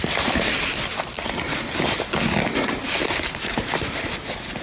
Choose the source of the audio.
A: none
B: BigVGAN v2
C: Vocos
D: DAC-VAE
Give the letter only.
A